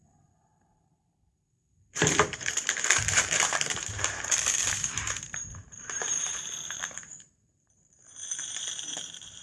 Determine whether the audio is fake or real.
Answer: fake